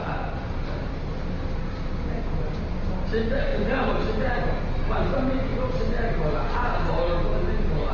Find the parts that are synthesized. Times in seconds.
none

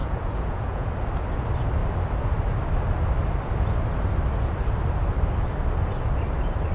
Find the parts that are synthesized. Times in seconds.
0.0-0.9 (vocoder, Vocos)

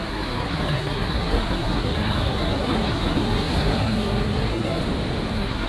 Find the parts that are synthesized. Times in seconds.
0.0-4.8 (codec, SNAC); 5.3-5.7

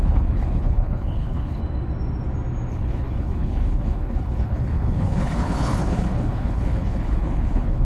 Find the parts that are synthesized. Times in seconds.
0.0-1.6 (codec, HILCodec); 2.7-7.8